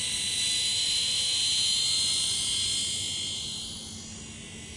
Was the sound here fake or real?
real